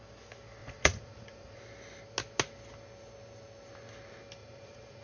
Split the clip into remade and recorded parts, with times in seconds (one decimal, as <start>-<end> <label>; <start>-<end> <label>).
0.0-0.6 recorded; 0.6-1.6 remade; 1.6-4.4 recorded; 4.4-5.0 remade